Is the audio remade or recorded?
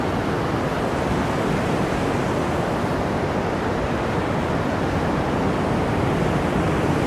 recorded